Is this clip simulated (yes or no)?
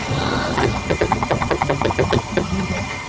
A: yes